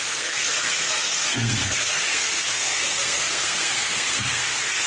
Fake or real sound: fake